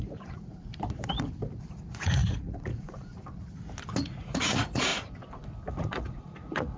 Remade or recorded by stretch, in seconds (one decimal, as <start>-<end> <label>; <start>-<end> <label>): 0.0-0.5 remade; 0.5-1.9 recorded; 1.9-3.1 remade; 3.1-4.0 recorded; 4.0-4.9 remade; 4.9-5.7 recorded; 5.7-6.8 remade